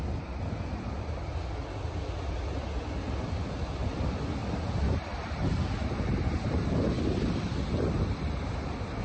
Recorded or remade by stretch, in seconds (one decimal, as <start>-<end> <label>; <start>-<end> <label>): 0.0-9.0 recorded